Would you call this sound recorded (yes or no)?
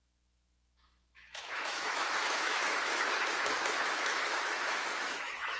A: no